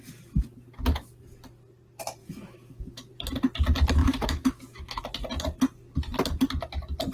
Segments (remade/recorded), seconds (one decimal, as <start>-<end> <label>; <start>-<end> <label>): 0.0-2.2 recorded; 2.2-3.1 remade; 3.1-4.0 recorded; 4.0-5.0 remade; 5.0-7.1 recorded